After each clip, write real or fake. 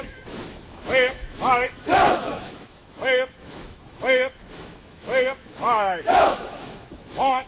fake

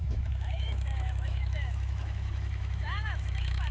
fake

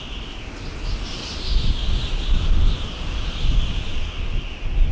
real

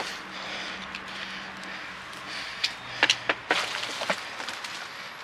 real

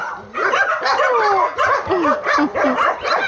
real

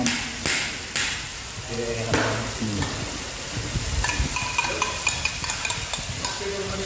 real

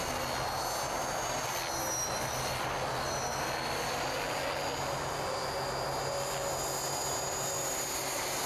real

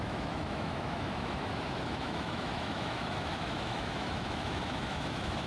fake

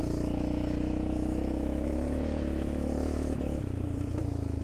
fake